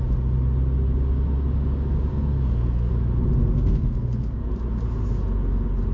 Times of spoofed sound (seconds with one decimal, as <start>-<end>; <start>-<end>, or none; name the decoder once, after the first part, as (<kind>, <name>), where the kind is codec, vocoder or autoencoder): 2.1-2.9 (codec, SNAC); 3.4-4.5